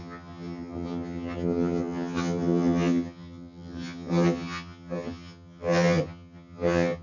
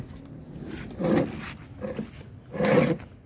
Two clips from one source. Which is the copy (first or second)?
first